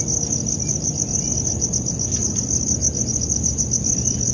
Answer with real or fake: real